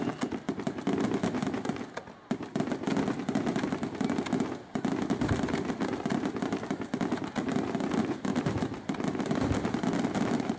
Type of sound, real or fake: real